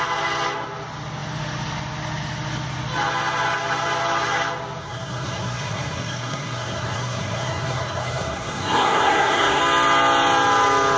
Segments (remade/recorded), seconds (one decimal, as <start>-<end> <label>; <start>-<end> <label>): 0.0-4.8 recorded; 4.8-9.6 remade; 9.6-11.0 recorded